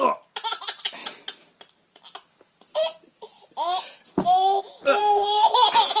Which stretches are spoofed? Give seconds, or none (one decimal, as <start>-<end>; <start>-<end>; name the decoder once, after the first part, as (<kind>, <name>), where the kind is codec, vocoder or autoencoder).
5.0-5.5 (codec, DAC)